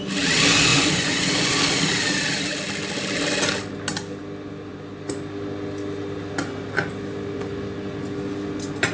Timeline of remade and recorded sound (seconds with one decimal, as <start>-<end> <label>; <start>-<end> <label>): 0.0-0.7 recorded; 0.7-1.6 remade; 1.6-8.9 recorded